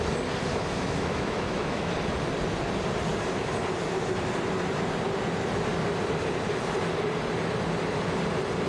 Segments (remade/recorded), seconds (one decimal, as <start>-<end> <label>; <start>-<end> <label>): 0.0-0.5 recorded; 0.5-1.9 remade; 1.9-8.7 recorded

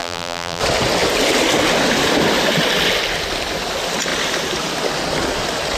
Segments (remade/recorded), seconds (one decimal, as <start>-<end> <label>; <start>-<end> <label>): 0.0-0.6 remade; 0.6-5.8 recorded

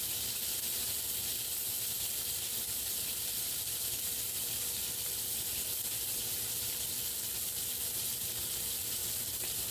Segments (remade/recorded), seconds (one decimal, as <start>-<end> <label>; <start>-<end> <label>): 0.0-9.7 recorded